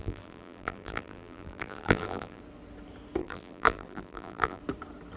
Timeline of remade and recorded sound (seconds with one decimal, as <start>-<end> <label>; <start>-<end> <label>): 0.0-2.4 remade; 2.4-3.2 recorded; 3.2-4.6 remade; 4.6-5.2 recorded